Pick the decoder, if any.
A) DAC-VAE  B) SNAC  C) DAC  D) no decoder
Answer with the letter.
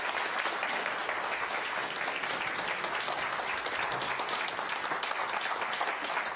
D